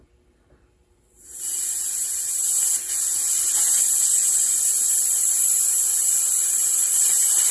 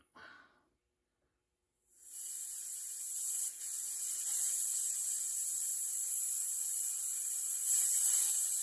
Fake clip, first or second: first